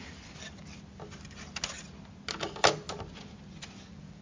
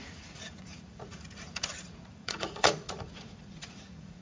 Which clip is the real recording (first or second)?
first